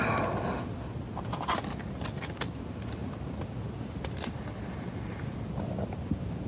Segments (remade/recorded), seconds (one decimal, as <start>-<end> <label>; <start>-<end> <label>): 0.0-6.5 recorded

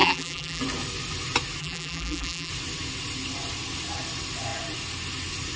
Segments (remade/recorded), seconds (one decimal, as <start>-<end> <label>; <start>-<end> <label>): 0.0-0.6 remade; 0.6-1.6 recorded; 1.6-2.5 remade; 2.5-5.6 recorded

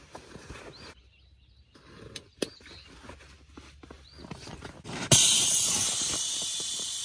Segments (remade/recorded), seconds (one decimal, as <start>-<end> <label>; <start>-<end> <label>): 0.0-7.0 recorded

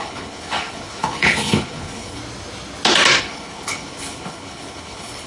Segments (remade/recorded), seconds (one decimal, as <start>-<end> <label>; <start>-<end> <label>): 0.0-2.2 remade; 2.2-3.2 recorded; 3.2-5.3 remade